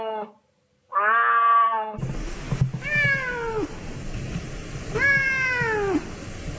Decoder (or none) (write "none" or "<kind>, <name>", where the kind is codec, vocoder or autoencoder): none